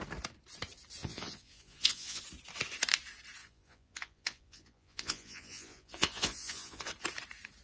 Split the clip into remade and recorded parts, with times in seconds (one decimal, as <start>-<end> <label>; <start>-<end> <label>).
0.0-1.0 recorded; 1.0-2.2 remade; 2.2-3.4 recorded; 3.4-6.9 remade; 6.9-7.6 recorded